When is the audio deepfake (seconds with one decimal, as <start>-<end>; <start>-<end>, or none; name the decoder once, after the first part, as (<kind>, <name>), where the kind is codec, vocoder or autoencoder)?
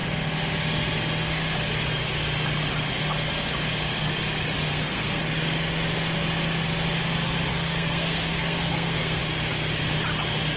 4.7-5.2 (codec, SNAC); 7.5-9.2